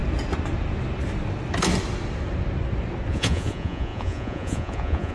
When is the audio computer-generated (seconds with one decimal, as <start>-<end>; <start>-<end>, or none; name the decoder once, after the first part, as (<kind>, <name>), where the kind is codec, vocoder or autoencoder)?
3.1-5.1 (vocoder, Vocos)